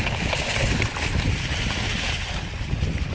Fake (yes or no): no